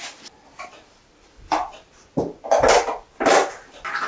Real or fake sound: real